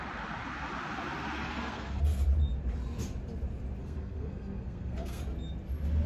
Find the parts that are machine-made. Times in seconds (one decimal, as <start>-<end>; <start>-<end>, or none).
1.4-2.0; 3.8-5.2

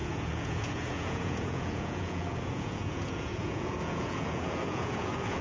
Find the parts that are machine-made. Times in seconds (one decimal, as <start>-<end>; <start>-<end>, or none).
0.0-5.4

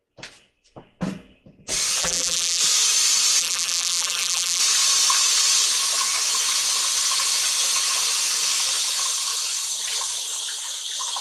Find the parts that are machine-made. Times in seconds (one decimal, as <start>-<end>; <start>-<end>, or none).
2.0-2.6; 3.4-4.6

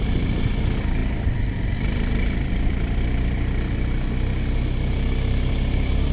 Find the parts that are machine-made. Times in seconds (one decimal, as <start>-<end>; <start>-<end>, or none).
none

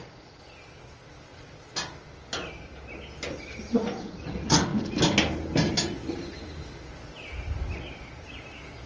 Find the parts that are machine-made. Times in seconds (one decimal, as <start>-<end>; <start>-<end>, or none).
none

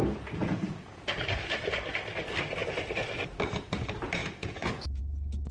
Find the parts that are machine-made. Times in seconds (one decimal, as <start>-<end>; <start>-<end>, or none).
0.4-1.2; 4.2-5.0